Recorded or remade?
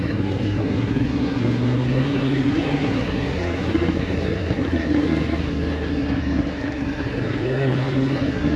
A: remade